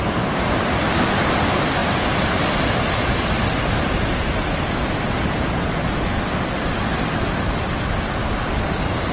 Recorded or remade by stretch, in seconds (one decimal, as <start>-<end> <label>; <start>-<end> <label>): 0.0-9.1 recorded

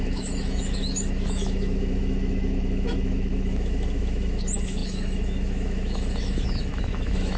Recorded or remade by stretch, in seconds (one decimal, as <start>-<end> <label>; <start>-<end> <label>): 0.0-7.4 remade

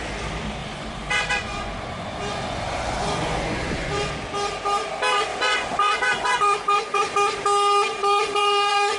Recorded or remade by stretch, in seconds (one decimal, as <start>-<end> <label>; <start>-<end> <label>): 0.0-0.6 recorded; 0.6-4.1 remade; 4.1-5.3 recorded; 5.3-7.0 remade; 7.0-8.0 recorded; 8.0-9.0 remade

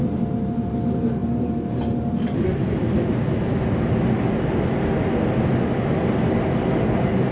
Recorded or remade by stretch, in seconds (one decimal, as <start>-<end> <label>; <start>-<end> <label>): 0.0-7.3 recorded

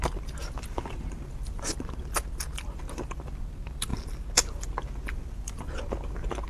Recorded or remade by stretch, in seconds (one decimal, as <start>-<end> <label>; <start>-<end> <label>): 0.0-6.5 recorded

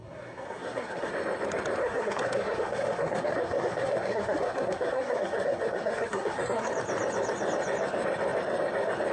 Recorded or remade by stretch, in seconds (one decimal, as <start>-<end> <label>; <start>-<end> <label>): 0.0-1.1 remade; 1.1-1.8 recorded; 1.8-6.7 remade; 6.7-9.1 recorded

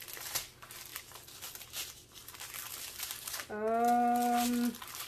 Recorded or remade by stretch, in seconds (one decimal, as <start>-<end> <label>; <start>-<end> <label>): 0.0-5.1 recorded